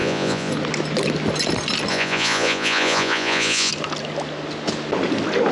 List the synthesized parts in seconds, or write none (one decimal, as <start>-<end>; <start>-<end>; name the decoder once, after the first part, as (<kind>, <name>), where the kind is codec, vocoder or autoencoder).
0.0-0.5 (vocoder, Vocos); 1.9-3.7